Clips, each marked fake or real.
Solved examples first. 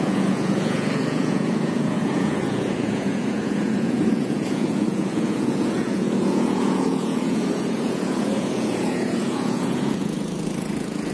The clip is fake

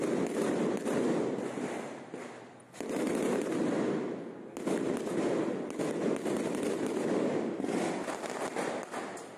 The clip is real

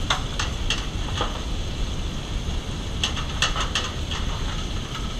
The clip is real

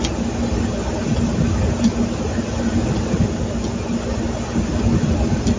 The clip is real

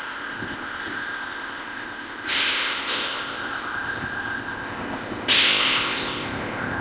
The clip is fake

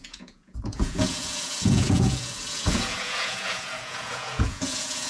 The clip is fake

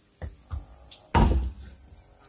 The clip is real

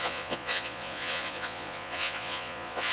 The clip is fake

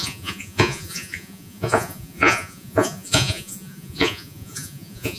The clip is fake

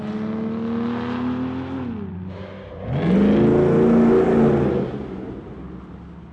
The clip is real